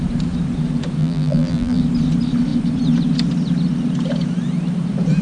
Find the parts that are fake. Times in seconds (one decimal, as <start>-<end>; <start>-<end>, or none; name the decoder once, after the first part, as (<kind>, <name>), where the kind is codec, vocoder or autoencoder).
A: 1.0-1.8 (vocoder, BigVGAN v2)